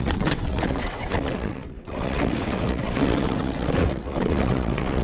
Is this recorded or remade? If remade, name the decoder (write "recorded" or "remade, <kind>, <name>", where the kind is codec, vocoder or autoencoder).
remade, vocoder, WaveNeXt